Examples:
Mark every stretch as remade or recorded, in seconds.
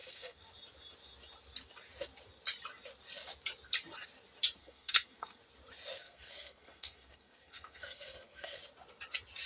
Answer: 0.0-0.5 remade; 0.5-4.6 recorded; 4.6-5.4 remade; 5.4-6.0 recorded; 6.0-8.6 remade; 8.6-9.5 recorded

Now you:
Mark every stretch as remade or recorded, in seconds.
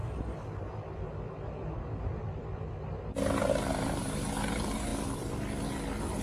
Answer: 0.0-3.5 recorded; 3.5-4.9 remade; 4.9-6.2 recorded